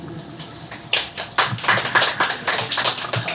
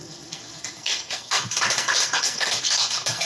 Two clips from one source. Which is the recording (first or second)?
first